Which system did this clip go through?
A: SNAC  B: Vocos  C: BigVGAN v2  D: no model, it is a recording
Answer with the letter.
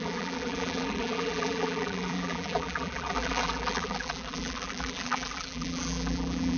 C